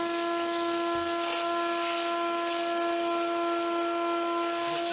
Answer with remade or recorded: recorded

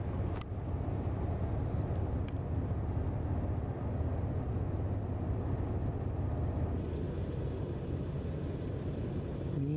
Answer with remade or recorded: recorded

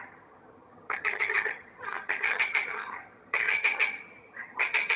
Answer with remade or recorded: remade